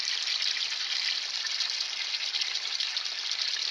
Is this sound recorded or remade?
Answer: recorded